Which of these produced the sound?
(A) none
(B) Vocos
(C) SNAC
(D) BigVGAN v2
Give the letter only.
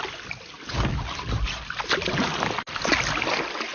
A